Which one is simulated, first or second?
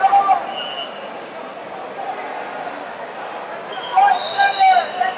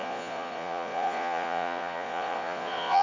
second